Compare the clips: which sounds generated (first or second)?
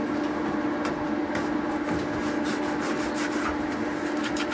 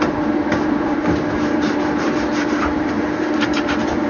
second